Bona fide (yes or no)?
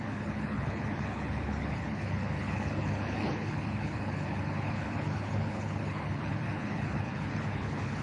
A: no